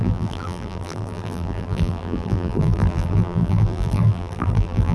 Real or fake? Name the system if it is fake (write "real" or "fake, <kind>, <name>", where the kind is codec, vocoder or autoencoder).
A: fake, vocoder, BigVGAN v2